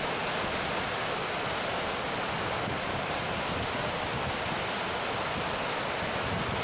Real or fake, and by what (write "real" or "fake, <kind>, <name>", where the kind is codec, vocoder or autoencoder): real